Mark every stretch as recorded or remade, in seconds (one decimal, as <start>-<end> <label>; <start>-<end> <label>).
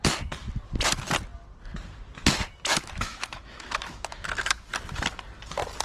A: 0.0-2.7 recorded; 2.7-4.7 remade; 4.7-5.8 recorded